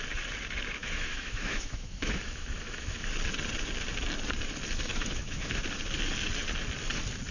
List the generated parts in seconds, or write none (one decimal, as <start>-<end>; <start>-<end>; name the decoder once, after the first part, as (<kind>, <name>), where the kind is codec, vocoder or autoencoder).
0.8-3.1 (autoencoder, DAC-VAE); 4.9-5.6